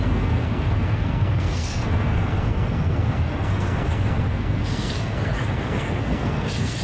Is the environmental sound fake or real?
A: fake